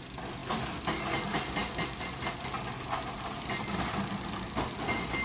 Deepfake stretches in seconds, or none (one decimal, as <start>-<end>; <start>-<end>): none